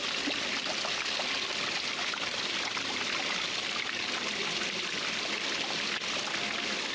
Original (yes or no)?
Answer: yes